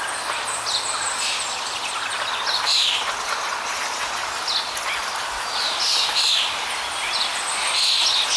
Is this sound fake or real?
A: real